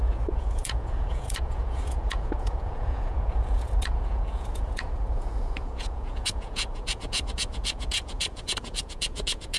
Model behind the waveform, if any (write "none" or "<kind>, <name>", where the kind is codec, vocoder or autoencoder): vocoder, Vocos